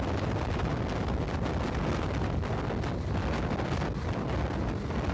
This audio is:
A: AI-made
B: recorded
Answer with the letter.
B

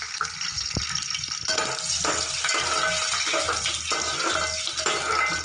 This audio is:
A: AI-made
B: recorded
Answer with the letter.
B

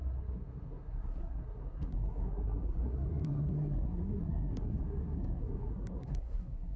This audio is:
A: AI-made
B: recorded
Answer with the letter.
A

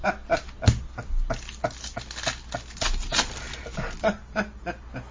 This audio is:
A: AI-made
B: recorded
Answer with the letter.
B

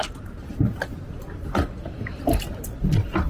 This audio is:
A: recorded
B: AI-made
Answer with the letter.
A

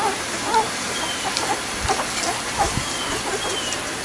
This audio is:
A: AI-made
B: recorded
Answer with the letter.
B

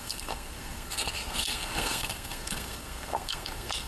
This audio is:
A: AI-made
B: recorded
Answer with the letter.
A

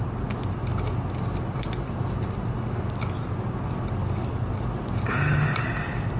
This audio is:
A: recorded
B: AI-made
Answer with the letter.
A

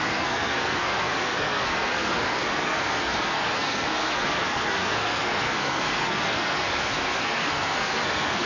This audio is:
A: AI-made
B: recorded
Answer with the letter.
A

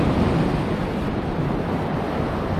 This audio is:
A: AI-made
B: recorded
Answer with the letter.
B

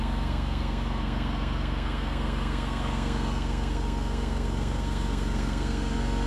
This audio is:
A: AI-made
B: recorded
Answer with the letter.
A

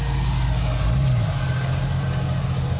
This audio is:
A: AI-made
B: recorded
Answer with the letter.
B